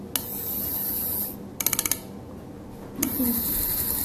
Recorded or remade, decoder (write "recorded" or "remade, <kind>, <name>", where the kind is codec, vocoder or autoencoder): recorded